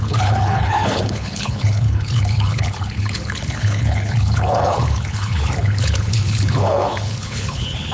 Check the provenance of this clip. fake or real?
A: fake